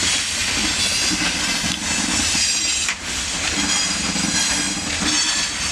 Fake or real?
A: real